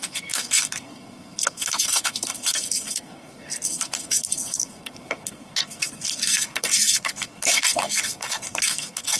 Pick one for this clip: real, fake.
fake